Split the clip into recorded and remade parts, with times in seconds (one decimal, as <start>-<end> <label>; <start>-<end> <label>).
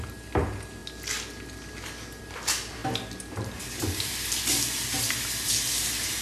0.0-6.2 recorded